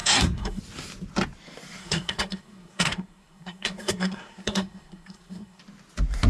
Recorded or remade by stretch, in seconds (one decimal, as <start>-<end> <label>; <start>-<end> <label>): 0.0-0.6 remade; 0.6-1.8 recorded; 1.8-5.6 remade; 5.6-6.3 recorded

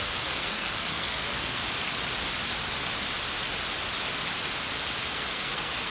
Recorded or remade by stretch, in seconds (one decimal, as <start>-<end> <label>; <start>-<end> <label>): 0.0-1.6 remade; 1.6-5.1 recorded; 5.1-5.9 remade

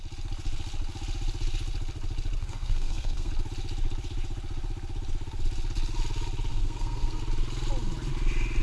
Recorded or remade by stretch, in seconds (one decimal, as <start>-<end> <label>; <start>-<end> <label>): 0.0-2.4 recorded; 2.4-3.3 remade; 3.3-6.5 recorded; 6.5-7.2 remade; 7.2-8.6 recorded